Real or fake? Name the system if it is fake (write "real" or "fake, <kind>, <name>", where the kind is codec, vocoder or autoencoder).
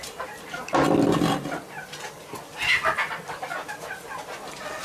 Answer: real